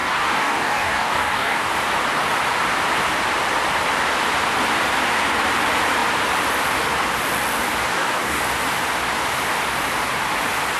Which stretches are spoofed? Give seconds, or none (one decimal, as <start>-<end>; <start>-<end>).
0.0-1.7; 7.9-8.4